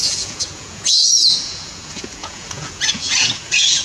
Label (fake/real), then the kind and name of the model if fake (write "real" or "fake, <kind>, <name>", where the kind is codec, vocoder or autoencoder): fake, vocoder, Vocos